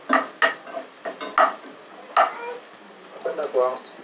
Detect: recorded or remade recorded